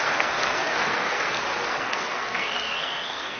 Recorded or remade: remade